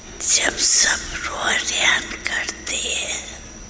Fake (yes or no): yes